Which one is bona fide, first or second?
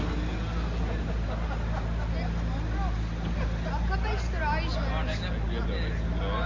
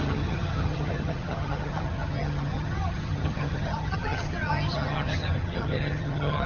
first